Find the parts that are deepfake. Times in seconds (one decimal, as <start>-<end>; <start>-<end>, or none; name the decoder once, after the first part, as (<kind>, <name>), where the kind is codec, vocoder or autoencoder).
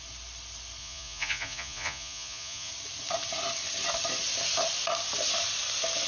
0.8-2.7 (vocoder, Vocos)